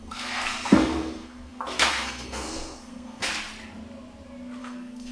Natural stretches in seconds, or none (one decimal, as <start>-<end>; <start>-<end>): 3.3-4.6